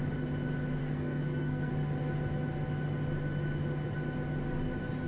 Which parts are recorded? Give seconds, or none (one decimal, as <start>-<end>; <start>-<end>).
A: 0.0-0.8; 1.7-5.1